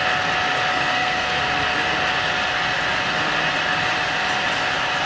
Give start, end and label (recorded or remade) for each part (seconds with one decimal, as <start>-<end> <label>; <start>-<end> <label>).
0.0-0.7 recorded; 0.7-1.4 remade; 1.4-5.1 recorded